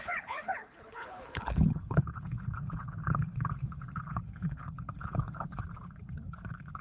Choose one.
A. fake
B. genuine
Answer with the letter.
A